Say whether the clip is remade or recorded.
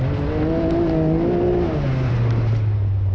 recorded